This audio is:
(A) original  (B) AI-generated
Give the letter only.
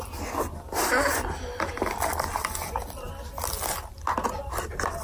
A